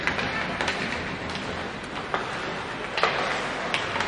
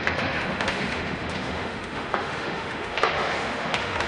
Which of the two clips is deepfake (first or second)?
second